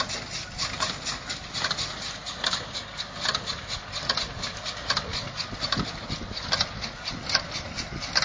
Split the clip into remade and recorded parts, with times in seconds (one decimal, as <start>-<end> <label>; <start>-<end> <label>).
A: 0.0-8.2 recorded